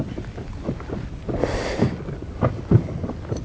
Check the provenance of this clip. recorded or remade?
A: recorded